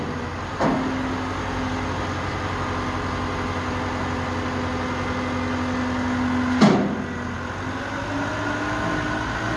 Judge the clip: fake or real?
real